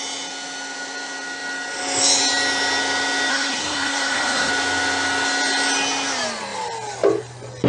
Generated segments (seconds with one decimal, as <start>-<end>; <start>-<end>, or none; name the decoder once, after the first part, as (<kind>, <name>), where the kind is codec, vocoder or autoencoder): 3.3-4.5 (codec, SNAC)